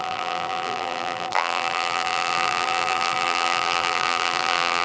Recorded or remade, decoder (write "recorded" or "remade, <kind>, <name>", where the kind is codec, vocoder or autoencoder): remade, vocoder, BigVGAN v2